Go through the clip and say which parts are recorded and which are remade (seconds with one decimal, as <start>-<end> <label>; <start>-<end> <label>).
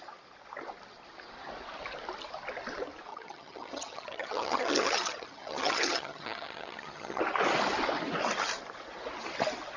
0.0-3.1 recorded; 3.1-7.2 remade; 7.2-9.8 recorded